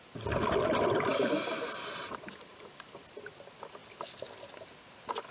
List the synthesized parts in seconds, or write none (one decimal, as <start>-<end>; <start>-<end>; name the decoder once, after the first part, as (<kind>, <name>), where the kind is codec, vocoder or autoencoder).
none